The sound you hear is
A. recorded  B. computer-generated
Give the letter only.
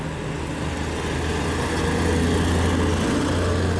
A